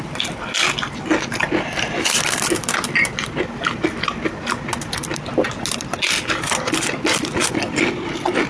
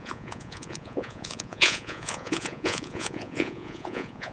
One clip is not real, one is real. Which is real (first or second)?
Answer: first